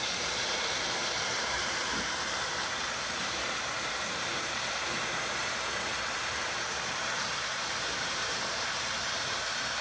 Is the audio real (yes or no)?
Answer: no